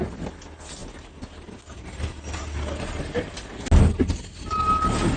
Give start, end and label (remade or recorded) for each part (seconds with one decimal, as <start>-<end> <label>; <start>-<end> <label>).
0.0-5.2 recorded